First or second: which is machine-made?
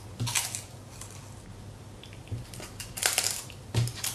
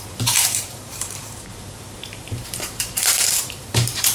second